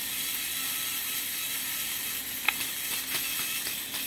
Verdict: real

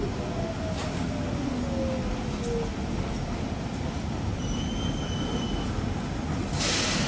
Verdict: real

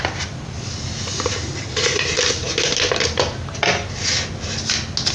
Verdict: real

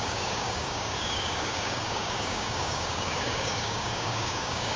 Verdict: fake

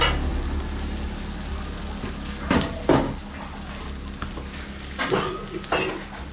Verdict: real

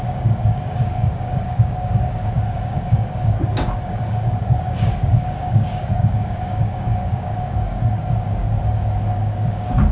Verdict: fake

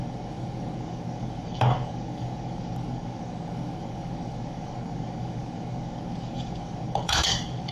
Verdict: fake